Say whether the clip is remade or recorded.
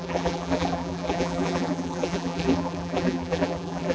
remade